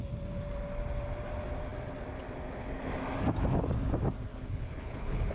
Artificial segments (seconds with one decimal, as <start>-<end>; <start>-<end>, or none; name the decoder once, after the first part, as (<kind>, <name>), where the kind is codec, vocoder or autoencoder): 4.3-5.3 (codec, HILCodec)